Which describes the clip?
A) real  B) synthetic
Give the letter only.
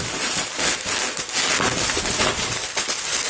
A